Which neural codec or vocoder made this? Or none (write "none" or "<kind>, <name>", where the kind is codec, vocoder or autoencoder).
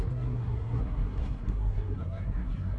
codec, SNAC